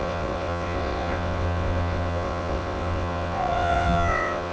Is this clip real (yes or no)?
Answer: no